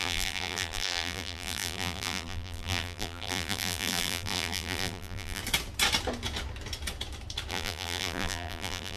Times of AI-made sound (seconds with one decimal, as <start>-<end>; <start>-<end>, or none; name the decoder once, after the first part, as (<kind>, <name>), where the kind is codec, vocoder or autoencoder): 0.0-5.4 (vocoder, BigVGAN v2); 7.5-9.0